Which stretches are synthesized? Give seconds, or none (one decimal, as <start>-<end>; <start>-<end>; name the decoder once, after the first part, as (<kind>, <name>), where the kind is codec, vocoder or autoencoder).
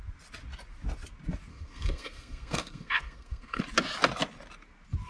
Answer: 1.5-3.6 (codec, SNAC)